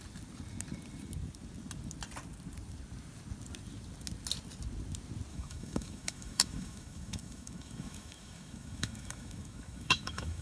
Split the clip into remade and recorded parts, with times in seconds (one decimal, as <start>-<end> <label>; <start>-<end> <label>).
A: 0.0-5.3 recorded; 5.3-10.4 remade